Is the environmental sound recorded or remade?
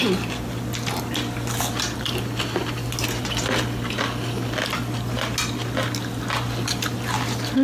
recorded